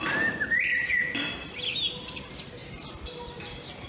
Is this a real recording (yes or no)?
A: yes